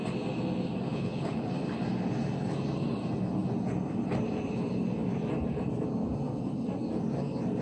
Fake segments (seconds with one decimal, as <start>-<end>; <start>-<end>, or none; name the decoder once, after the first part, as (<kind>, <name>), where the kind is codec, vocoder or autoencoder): 0.9-1.5 (codec, HILCodec)